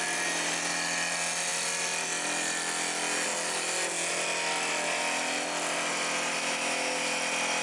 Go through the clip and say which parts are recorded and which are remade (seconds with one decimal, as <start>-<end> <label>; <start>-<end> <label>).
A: 0.0-6.3 recorded; 6.3-7.1 remade; 7.1-7.6 recorded